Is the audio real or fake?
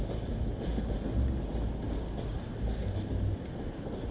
real